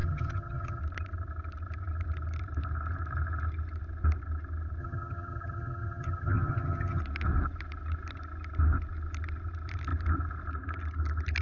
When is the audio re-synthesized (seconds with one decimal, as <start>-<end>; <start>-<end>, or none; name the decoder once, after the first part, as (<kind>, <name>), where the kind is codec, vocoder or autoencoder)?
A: 0.0-0.8 (vocoder, HiFi-GAN); 4.8-7.0